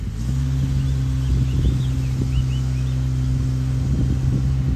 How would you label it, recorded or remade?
recorded